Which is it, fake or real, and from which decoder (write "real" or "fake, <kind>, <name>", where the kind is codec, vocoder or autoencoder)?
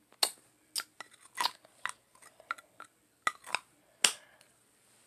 real